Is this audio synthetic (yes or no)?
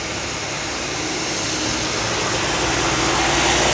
no